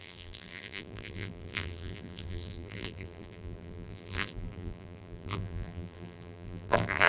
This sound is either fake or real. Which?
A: fake